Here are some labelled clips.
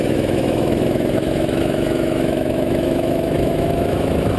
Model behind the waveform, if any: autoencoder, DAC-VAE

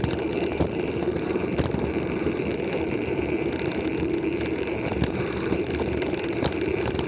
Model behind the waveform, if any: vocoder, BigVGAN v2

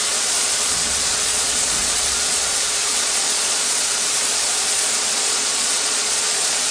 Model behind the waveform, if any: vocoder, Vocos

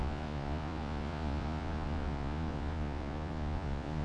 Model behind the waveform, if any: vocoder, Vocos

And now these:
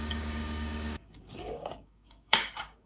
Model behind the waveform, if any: codec, DAC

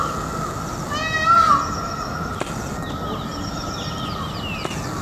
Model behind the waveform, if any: none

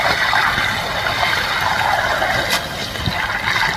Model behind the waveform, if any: none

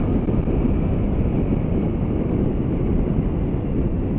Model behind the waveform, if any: none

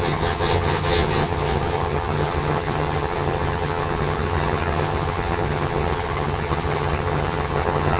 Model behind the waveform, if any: vocoder, HiFi-GAN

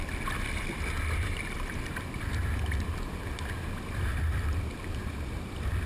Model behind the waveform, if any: none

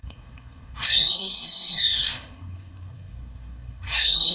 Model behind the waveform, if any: codec, SNAC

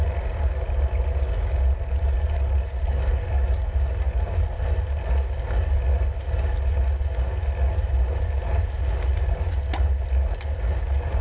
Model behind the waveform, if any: none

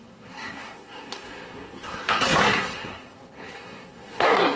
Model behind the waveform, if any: codec, SNAC